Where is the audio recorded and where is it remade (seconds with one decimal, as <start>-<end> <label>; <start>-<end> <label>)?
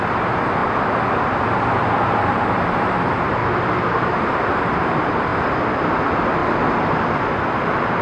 0.0-0.6 remade; 0.6-1.2 recorded; 1.2-3.4 remade; 3.4-4.0 recorded; 4.0-5.3 remade; 5.3-5.8 recorded; 5.8-6.4 remade; 6.4-7.1 recorded; 7.1-8.0 remade